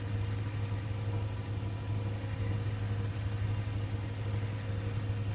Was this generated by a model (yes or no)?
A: no